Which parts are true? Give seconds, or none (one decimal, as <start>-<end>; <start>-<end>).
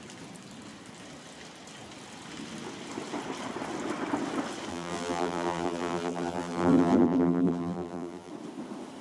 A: 0.0-4.7; 8.3-9.0